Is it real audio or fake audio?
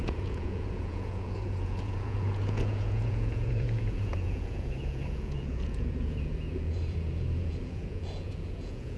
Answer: fake